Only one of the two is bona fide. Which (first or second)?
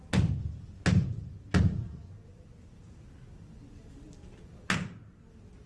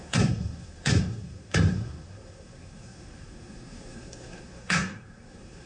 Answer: first